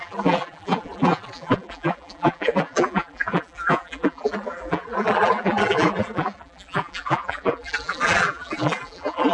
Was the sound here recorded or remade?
remade